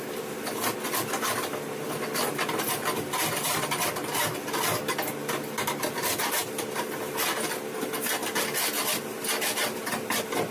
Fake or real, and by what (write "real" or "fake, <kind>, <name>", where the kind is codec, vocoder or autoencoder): real